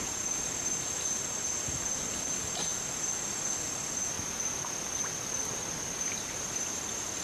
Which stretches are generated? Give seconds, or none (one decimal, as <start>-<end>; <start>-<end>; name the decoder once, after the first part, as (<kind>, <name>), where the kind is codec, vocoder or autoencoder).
none